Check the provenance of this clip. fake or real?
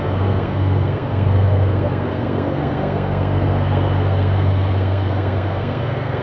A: fake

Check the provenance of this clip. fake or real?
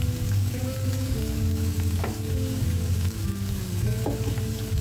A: fake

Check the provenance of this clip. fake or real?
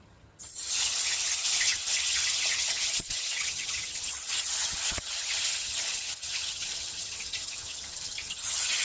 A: fake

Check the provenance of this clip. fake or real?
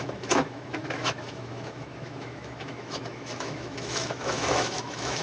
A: fake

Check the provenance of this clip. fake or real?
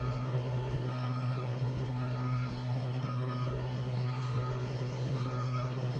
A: fake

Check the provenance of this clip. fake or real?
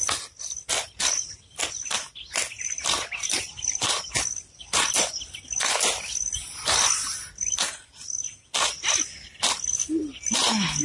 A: real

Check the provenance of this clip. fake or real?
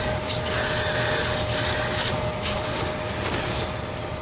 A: real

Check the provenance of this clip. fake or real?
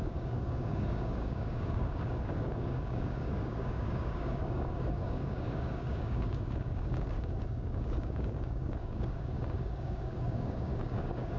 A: fake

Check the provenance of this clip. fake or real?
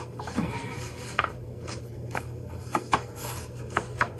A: fake